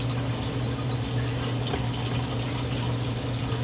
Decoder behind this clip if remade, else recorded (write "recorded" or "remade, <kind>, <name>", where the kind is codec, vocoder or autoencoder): recorded